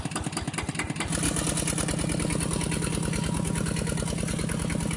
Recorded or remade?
recorded